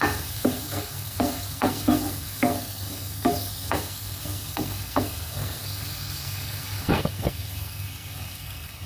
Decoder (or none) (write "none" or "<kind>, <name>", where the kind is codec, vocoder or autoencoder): codec, SNAC